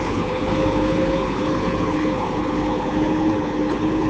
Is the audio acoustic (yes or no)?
no